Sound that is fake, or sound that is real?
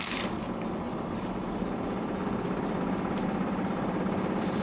fake